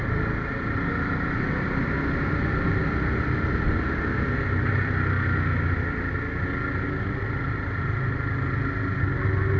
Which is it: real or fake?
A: real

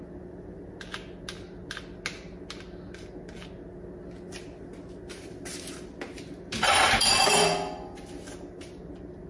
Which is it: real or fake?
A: real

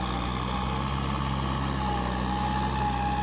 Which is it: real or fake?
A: real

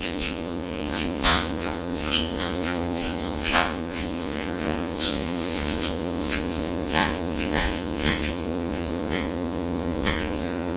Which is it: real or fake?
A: fake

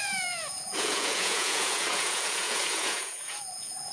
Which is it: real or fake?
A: fake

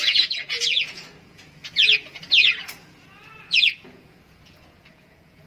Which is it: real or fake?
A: fake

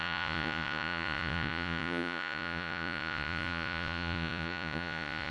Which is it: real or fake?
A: fake